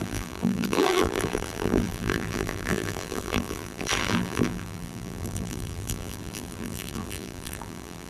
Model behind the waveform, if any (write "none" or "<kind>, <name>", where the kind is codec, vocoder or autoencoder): vocoder, BigVGAN v2